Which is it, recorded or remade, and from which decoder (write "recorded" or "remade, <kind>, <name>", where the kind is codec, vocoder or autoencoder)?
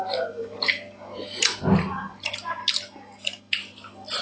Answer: recorded